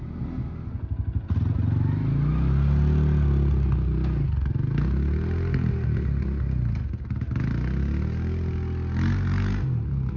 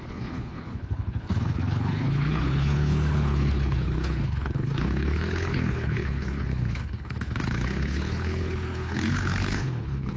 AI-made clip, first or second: second